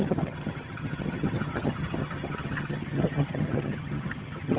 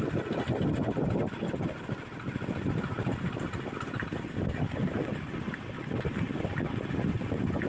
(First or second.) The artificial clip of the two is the first